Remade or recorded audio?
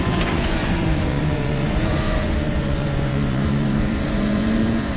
remade